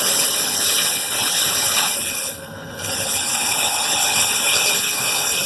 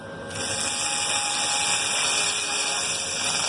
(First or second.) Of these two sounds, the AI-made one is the first